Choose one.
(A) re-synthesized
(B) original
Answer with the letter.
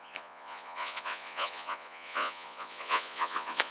A